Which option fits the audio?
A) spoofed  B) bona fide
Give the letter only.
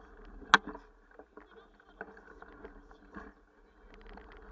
B